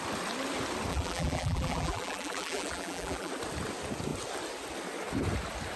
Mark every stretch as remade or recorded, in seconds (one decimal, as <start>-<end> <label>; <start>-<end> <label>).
0.0-0.9 recorded; 0.9-3.3 remade; 3.3-5.8 recorded